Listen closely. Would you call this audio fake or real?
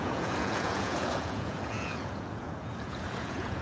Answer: fake